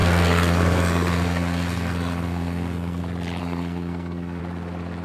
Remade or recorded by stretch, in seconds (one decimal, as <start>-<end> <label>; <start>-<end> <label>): 0.0-3.0 remade; 3.0-3.4 recorded; 3.4-4.4 remade; 4.4-5.0 recorded